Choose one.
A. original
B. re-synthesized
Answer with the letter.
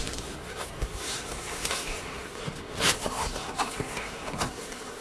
B